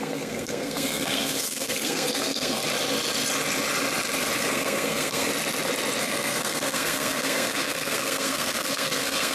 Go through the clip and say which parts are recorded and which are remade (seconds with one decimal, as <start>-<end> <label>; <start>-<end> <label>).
0.0-2.6 remade; 2.6-4.4 recorded; 4.4-5.3 remade; 5.3-6.0 recorded; 6.0-9.3 remade

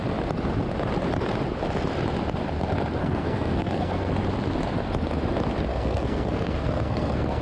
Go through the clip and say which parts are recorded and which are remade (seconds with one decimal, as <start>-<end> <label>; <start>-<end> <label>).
0.0-3.0 recorded; 3.0-4.1 remade; 4.1-5.7 recorded; 5.7-7.4 remade

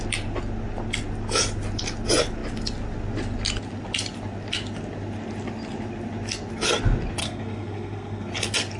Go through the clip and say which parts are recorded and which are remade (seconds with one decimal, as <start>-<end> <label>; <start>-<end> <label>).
0.0-7.2 recorded; 7.2-8.3 remade; 8.3-8.8 recorded

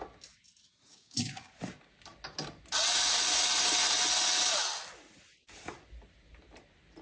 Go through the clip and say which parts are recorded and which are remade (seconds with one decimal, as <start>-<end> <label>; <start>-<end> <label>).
0.0-0.9 recorded; 0.9-1.5 remade; 1.5-7.0 recorded

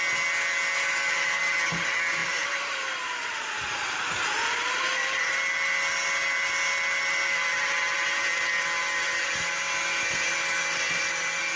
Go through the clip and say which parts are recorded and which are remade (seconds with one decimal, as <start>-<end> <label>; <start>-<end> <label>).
0.0-2.2 recorded; 2.2-4.8 remade; 4.8-11.6 recorded

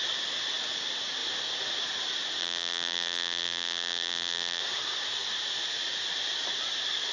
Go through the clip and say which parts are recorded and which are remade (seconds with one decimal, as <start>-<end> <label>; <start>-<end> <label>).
0.0-2.4 recorded; 2.4-4.6 remade; 4.6-7.1 recorded